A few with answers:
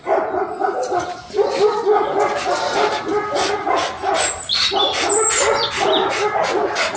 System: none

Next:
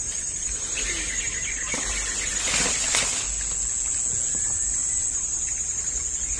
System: none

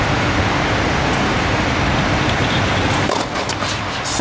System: none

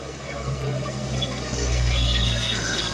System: codec, SNAC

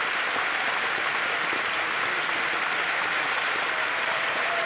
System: none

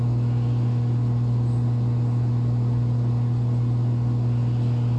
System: none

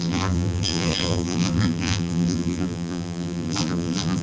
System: vocoder, BigVGAN v2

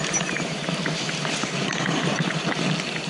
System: none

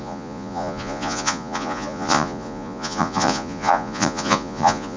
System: vocoder, Vocos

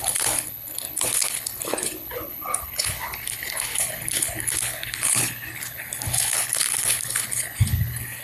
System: codec, HILCodec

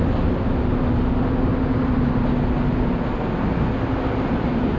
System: none